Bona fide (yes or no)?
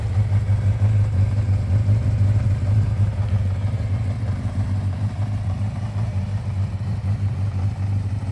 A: no